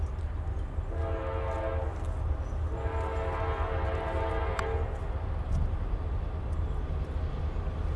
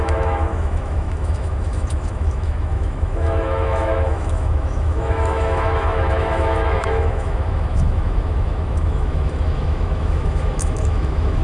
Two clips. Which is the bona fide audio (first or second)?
first